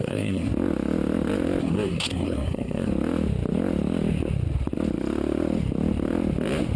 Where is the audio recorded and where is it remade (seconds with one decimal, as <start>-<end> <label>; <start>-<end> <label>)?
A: 0.0-0.5 remade; 0.5-1.6 recorded; 1.6-2.9 remade; 2.9-6.8 recorded